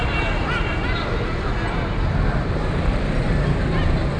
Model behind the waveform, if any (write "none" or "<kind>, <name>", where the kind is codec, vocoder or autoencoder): none